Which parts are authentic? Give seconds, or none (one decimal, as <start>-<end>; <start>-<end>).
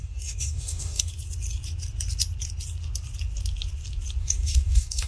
1.1-4.2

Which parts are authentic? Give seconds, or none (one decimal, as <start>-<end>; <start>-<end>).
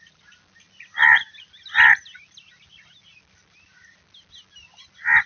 0.0-5.3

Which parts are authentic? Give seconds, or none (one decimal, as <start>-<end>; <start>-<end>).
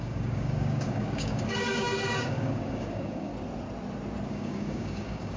3.3-4.3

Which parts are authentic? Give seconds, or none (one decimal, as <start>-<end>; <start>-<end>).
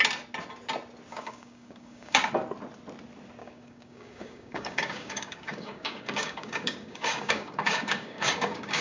0.0-1.1; 2.3-3.4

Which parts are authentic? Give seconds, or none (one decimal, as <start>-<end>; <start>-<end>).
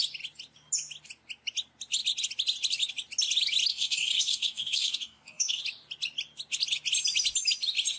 0.0-3.7; 5.6-8.0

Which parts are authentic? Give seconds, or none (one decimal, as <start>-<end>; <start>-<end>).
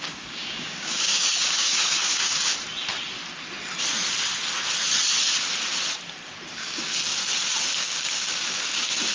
2.5-6.5; 7.3-7.8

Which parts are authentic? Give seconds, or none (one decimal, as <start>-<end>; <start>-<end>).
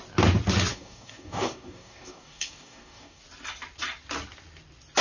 0.0-0.7; 3.2-5.0